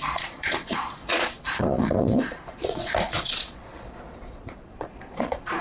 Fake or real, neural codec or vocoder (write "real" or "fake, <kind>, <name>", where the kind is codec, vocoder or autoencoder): fake, vocoder, Vocos